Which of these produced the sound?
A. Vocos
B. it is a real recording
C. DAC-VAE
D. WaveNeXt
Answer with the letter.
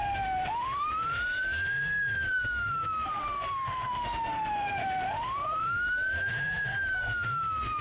C